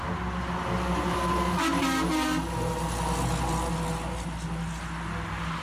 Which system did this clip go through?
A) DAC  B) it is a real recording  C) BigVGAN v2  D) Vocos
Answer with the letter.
B